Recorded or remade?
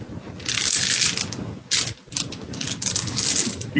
recorded